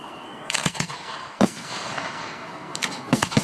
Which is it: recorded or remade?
remade